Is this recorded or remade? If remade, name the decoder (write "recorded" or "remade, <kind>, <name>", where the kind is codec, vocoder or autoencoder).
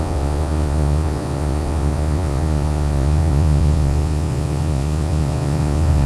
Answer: remade, vocoder, Vocos